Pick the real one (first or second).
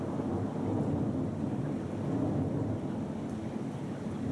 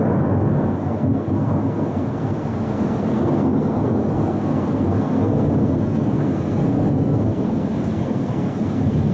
first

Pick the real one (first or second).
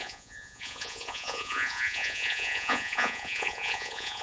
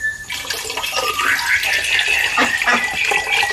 second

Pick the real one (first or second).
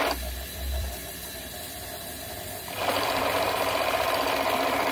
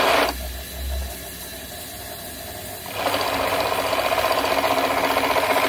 second